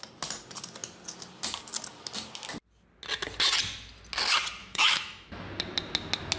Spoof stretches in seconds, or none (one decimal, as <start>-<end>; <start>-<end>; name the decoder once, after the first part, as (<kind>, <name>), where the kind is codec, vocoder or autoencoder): 4.6-5.3 (autoencoder, DAC-VAE)

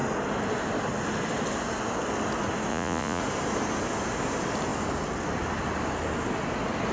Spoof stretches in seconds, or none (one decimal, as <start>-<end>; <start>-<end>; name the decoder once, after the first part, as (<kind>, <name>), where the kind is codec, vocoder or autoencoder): 2.7-3.2 (vocoder, Vocos)

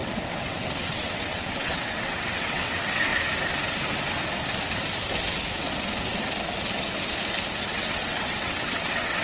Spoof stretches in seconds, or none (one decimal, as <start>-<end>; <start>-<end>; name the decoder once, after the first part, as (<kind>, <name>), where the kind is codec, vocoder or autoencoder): 0.0-3.1 (vocoder, WaveNeXt); 7.7-9.2